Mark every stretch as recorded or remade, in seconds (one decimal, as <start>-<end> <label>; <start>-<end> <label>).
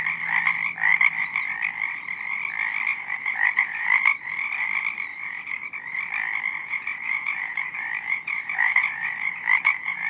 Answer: 0.0-2.9 recorded; 2.9-4.3 remade; 4.3-5.1 recorded; 5.1-5.9 remade; 5.9-6.6 recorded; 6.6-10.1 remade